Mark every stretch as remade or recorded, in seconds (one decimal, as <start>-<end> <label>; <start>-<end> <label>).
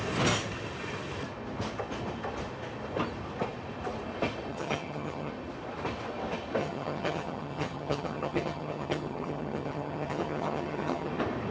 0.0-4.5 recorded; 4.5-5.3 remade; 5.3-6.6 recorded; 6.6-11.1 remade; 11.1-11.5 recorded